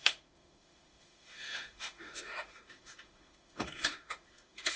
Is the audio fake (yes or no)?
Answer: yes